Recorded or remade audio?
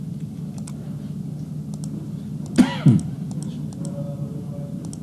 recorded